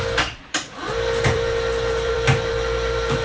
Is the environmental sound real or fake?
fake